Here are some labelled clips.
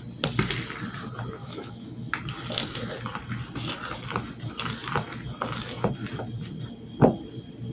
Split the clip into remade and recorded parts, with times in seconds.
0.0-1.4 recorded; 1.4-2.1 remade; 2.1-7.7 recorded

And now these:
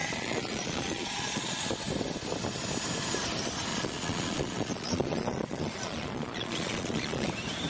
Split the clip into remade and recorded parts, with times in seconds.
0.0-1.6 remade; 1.6-3.7 recorded; 3.7-7.3 remade; 7.3-7.7 recorded

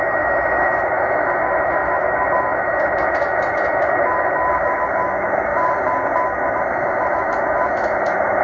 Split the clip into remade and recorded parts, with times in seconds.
0.0-5.5 remade; 5.5-6.2 recorded; 6.2-8.4 remade

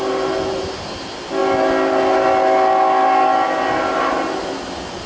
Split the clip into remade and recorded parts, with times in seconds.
0.0-5.1 recorded

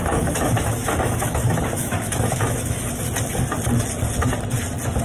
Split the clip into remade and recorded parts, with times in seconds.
0.0-3.0 remade; 3.0-5.0 recorded

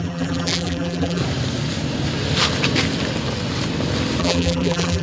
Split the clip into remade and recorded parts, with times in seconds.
0.0-1.2 remade; 1.2-4.2 recorded; 4.2-5.0 remade

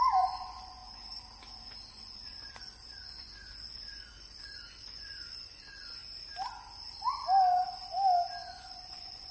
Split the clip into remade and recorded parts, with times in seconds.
0.0-0.8 remade; 0.8-1.9 recorded; 1.9-6.0 remade; 6.0-8.4 recorded; 8.4-9.3 remade

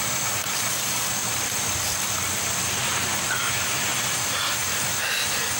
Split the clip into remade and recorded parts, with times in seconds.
0.0-1.2 recorded; 1.2-3.4 remade; 3.4-3.9 recorded; 3.9-4.5 remade; 4.5-5.6 recorded